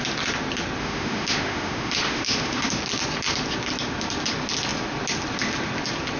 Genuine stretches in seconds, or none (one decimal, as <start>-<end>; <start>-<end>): 0.0-0.8; 2.8-6.2